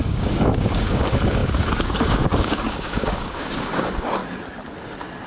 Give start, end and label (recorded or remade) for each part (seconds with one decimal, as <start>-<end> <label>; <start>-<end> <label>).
0.0-4.2 remade; 4.2-5.3 recorded